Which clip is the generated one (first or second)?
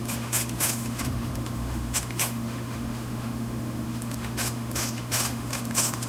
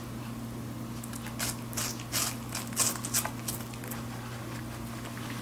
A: first